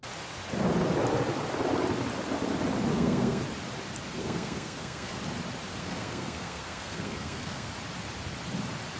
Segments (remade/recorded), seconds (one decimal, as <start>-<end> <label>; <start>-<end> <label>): 0.0-2.9 recorded; 2.9-3.4 remade; 3.4-4.2 recorded; 4.2-5.2 remade; 5.2-5.8 recorded; 5.8-7.7 remade; 7.7-9.0 recorded